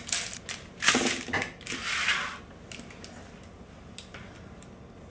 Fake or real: real